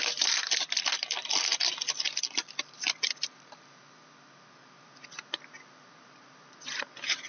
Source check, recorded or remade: recorded